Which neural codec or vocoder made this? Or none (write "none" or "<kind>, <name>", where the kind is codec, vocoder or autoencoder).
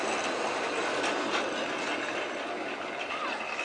none